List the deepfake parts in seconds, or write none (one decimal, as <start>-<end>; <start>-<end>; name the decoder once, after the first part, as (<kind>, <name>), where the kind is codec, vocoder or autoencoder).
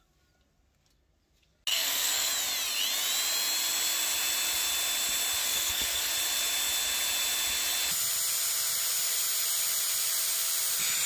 1.7-2.3 (codec, SNAC); 5.4-6.1